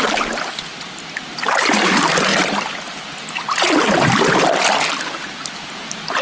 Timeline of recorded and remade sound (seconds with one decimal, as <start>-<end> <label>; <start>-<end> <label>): 0.0-6.2 recorded